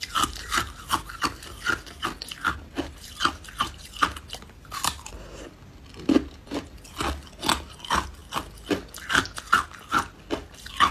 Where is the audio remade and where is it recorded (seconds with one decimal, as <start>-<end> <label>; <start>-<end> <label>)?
0.0-10.9 recorded